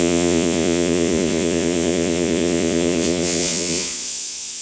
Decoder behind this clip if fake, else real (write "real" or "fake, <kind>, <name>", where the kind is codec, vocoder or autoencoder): fake, vocoder, Vocos